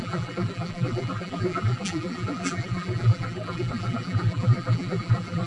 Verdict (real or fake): fake